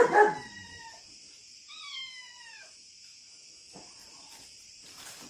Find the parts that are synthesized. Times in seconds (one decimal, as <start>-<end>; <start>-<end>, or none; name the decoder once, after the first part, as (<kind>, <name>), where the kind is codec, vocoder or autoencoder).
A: 2.0-3.9 (autoencoder, DAC-VAE)